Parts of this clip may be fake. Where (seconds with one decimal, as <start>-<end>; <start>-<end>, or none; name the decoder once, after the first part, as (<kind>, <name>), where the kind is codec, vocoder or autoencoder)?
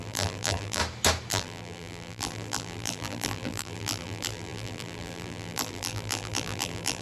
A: 0.0-0.8 (vocoder, BigVGAN v2); 1.3-7.0